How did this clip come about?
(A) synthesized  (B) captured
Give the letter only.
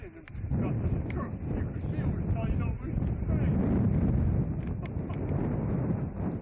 B